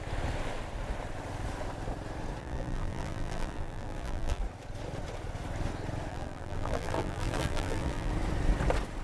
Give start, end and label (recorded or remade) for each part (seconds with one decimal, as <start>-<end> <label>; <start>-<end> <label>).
0.0-2.4 recorded; 2.4-4.4 remade; 4.4-6.1 recorded; 6.1-8.1 remade; 8.1-9.0 recorded